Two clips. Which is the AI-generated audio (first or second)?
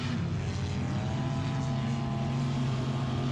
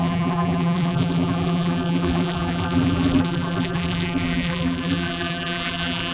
second